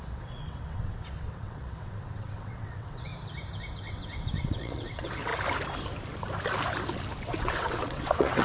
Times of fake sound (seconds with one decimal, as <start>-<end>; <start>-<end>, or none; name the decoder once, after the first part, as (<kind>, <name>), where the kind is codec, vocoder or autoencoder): 0.0-3.1 (vocoder, WaveNeXt); 3.7-5.3; 7.2-8.4

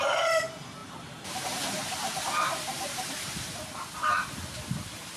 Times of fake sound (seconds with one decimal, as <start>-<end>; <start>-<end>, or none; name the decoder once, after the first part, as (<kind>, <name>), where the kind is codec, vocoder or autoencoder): 0.8-3.9 (vocoder, BigVGAN v2)

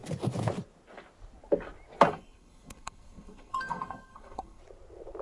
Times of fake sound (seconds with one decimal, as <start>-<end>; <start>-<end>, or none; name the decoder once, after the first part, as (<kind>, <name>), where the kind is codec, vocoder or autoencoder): 2.1-4.6 (codec, SNAC)

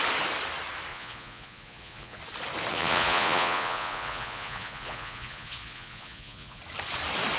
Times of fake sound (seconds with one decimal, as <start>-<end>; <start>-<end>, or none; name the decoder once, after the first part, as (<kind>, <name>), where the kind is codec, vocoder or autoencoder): 0.9-2.2 (vocoder, Vocos); 2.7-6.6

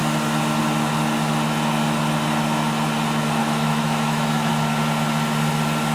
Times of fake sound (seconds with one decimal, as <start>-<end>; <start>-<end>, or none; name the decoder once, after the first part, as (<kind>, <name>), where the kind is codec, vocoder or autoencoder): 3.4-4.5 (autoencoder, DAC-VAE)